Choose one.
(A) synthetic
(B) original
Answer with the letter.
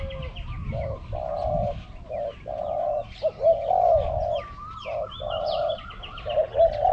B